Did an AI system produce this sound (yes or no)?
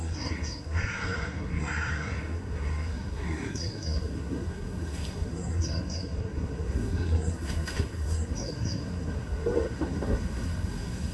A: yes